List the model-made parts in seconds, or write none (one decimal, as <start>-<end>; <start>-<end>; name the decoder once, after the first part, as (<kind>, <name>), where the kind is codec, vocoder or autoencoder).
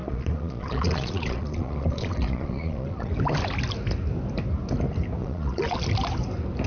0.0-3.1 (vocoder, Vocos); 5.2-5.8